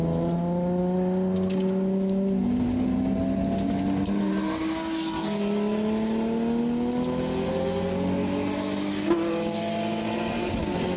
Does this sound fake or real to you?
real